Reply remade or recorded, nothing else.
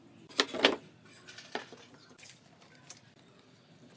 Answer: recorded